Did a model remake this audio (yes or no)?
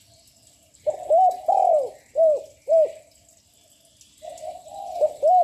no